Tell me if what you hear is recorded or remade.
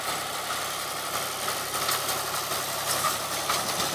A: recorded